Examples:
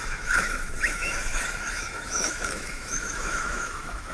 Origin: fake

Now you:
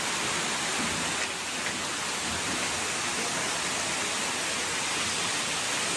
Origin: real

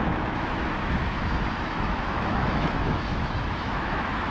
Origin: fake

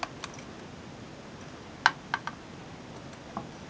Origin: real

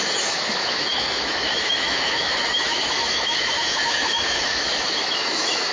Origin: fake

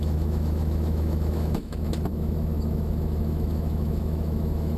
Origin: fake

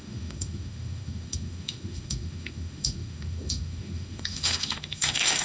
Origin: fake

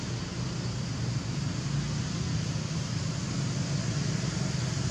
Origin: real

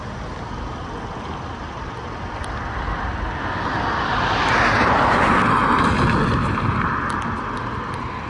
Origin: real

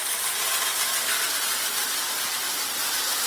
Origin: real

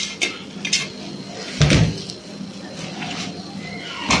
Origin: real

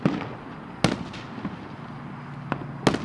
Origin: real